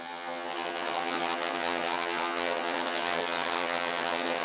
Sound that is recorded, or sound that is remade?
remade